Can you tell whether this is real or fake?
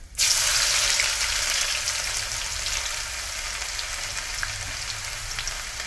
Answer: real